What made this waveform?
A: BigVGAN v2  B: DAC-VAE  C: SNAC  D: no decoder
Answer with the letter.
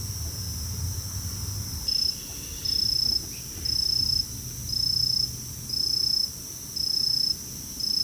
D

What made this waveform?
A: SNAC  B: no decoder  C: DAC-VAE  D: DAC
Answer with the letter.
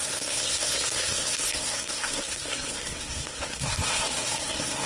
A